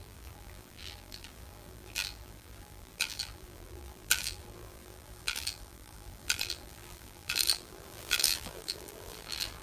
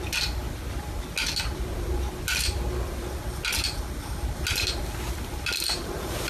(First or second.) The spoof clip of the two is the first